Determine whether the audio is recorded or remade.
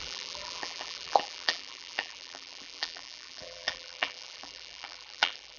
remade